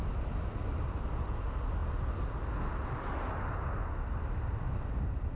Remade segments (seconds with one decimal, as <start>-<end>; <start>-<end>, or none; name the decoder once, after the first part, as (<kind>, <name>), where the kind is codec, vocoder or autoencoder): none